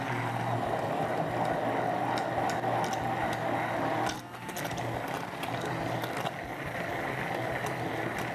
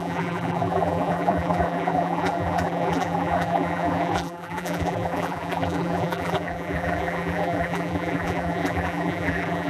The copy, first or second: second